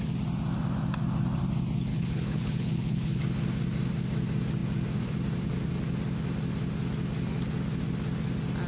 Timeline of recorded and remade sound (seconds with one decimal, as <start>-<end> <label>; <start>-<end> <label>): 0.0-1.9 recorded; 1.9-3.2 remade; 3.2-8.7 recorded

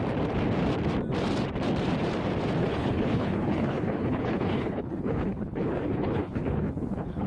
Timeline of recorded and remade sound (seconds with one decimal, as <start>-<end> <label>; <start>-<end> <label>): 0.0-2.6 recorded; 2.6-7.3 remade

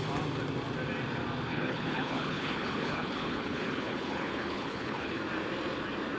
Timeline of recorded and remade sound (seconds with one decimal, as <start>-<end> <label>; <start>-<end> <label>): 0.0-1.5 recorded; 1.5-5.2 remade; 5.2-6.2 recorded

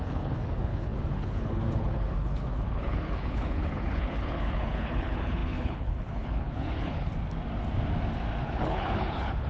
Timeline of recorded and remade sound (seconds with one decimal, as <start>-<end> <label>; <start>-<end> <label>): 0.0-7.1 remade; 7.1-8.4 recorded; 8.4-9.5 remade

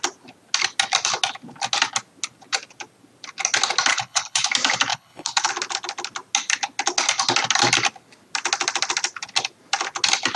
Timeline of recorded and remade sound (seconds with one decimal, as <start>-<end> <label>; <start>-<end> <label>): 0.0-3.9 recorded; 3.9-4.5 remade; 4.5-4.9 recorded; 4.9-5.5 remade; 5.5-10.4 recorded

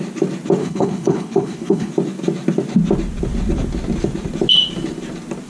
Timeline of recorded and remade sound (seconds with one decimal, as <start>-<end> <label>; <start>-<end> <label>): 0.0-0.6 recorded; 0.6-1.9 remade; 1.9-5.5 recorded

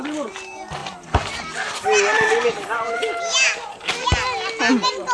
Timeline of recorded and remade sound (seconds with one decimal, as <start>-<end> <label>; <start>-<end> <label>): 0.0-5.1 recorded

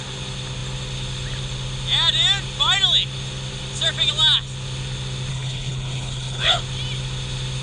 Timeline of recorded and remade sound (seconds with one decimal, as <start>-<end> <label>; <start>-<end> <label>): 0.0-5.3 recorded; 5.3-6.6 remade; 6.6-7.6 recorded